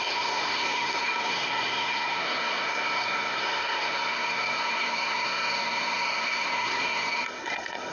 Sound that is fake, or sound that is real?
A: fake